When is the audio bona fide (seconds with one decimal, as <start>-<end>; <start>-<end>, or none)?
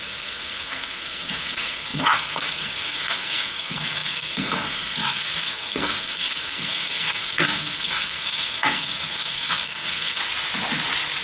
10.2-11.2